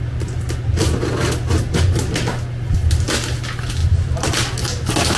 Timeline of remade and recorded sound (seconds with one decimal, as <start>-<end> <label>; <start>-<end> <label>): 0.0-3.8 recorded; 3.8-4.5 remade; 4.5-5.2 recorded